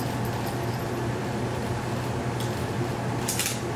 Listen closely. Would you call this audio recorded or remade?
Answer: recorded